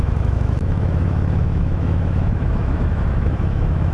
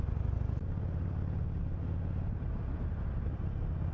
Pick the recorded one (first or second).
second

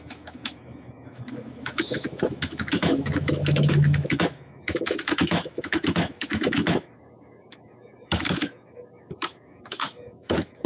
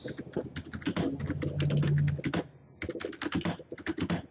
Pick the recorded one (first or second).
second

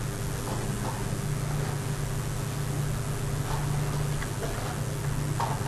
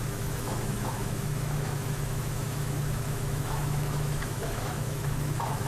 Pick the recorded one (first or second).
first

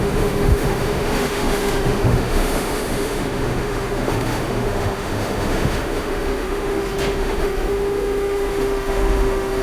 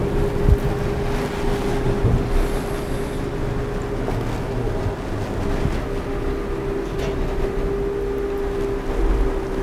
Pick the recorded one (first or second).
second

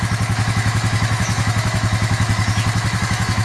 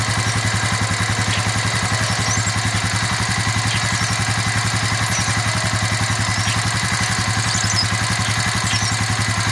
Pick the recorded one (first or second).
second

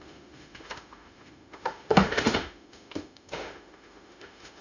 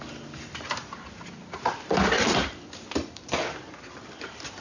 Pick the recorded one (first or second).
second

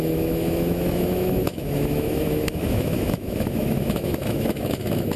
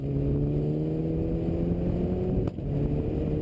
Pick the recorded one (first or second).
second